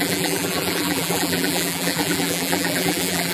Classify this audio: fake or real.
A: fake